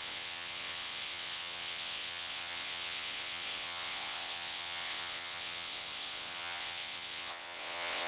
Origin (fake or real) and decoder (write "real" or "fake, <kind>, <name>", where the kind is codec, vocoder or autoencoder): fake, vocoder, WaveNeXt